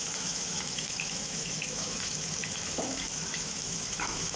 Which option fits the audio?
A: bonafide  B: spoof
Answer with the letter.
B